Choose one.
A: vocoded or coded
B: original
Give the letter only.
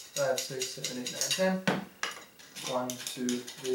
B